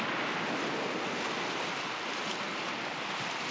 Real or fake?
real